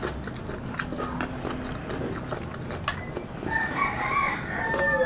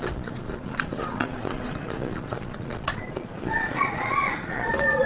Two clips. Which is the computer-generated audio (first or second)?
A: second